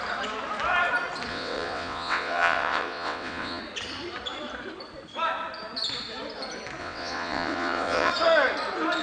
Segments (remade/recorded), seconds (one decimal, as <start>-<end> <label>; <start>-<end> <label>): 0.0-1.3 recorded; 1.3-3.6 remade; 3.6-6.8 recorded; 6.8-8.1 remade; 8.1-9.0 recorded